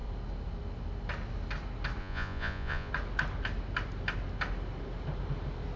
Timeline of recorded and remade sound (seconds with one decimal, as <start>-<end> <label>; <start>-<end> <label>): 0.0-2.0 recorded; 2.0-2.9 remade; 2.9-5.8 recorded